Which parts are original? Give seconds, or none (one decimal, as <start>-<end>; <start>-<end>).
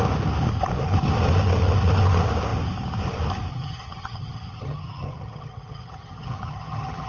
0.0-3.5